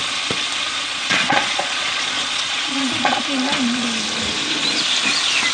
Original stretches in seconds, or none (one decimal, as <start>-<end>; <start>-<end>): 0.0-0.9; 3.2-5.5